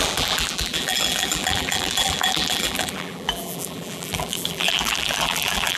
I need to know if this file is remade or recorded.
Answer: remade